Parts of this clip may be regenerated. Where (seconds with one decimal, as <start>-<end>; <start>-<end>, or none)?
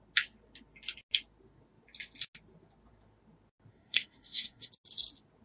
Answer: 3.7-4.7